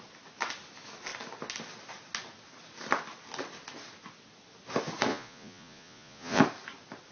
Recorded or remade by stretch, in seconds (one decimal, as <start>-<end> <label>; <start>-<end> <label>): 0.0-5.1 recorded; 5.1-6.4 remade; 6.4-7.1 recorded